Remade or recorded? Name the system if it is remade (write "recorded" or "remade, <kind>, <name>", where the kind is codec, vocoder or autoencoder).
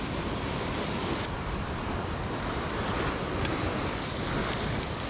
remade, vocoder, BigVGAN v2